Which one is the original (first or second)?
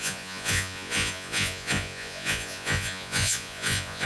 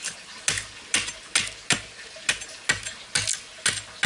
second